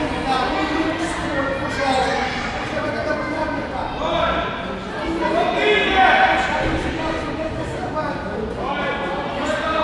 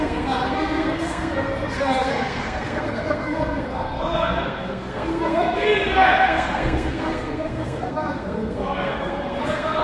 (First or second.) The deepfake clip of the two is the second